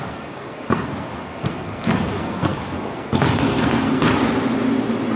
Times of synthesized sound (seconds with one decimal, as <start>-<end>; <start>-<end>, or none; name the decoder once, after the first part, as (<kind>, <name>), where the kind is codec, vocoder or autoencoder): 0.0-4.0 (codec, SNAC)